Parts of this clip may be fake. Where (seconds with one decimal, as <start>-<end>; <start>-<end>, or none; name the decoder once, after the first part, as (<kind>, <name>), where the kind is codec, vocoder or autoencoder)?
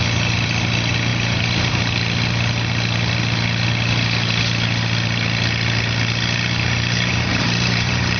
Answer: 1.1-1.7 (vocoder, BigVGAN v2); 7.3-8.2